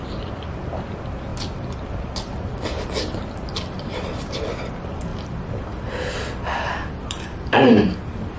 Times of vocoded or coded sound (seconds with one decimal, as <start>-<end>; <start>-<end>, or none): 0.0-8.4